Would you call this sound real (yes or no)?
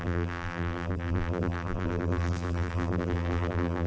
no